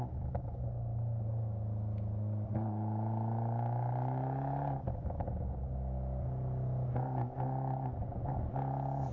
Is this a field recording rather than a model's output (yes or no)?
yes